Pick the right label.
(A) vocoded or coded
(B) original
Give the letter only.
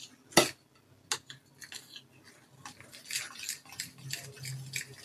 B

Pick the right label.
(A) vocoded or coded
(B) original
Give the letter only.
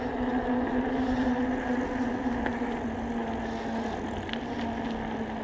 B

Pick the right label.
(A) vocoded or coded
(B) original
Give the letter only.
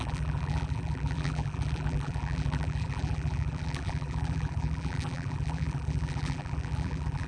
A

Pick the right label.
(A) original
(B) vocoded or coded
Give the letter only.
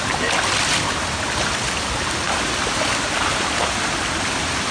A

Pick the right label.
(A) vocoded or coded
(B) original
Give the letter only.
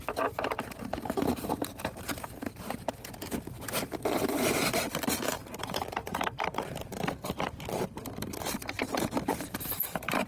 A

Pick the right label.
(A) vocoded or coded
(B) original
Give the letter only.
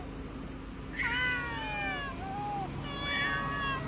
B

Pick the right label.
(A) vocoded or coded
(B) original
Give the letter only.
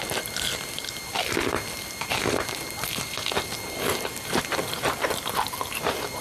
A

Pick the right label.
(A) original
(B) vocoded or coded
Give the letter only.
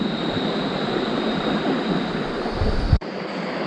B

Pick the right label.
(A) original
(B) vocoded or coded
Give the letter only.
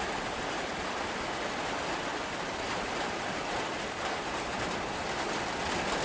B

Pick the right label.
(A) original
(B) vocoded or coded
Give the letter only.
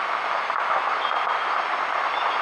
A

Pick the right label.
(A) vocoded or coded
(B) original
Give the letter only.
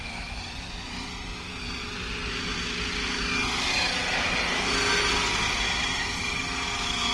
B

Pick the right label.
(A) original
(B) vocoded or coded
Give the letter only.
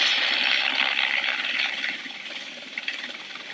B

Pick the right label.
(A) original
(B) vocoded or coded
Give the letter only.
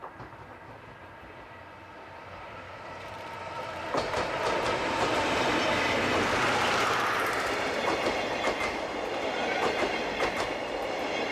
B